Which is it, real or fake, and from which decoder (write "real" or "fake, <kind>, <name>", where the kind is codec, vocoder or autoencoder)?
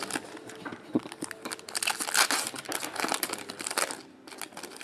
real